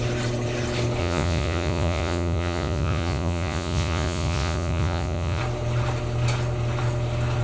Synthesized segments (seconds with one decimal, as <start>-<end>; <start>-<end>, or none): 1.0-5.4